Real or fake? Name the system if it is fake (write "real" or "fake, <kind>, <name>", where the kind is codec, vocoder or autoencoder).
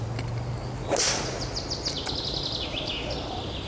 real